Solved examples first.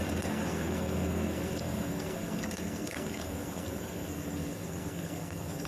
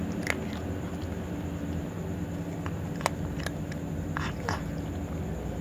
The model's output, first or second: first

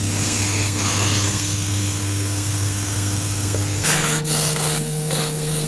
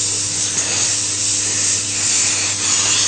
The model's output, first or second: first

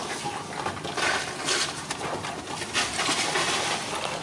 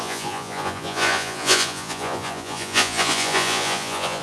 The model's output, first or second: second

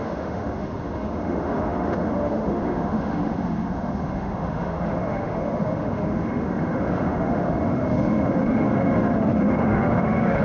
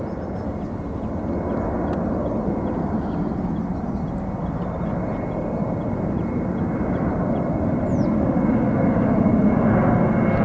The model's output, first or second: first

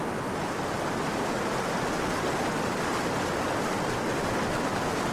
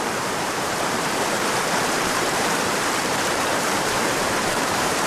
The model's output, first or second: second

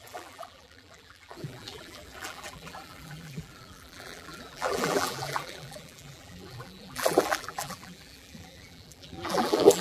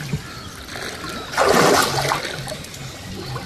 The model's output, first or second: first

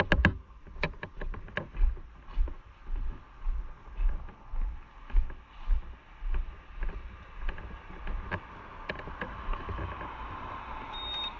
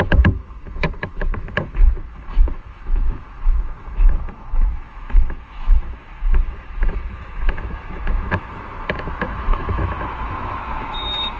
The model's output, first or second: second